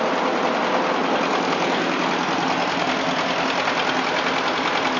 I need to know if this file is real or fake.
real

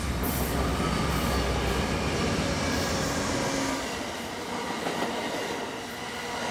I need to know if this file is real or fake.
real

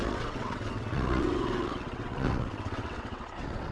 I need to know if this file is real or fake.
fake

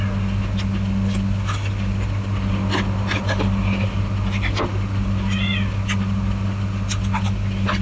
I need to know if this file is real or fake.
real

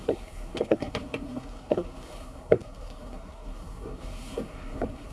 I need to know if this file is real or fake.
fake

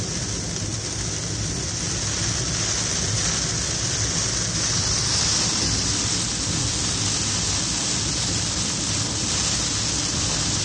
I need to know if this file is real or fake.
real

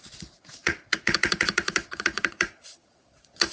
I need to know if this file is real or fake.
fake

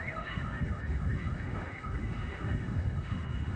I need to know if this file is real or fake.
fake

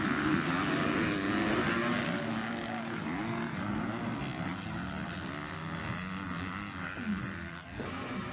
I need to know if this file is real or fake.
real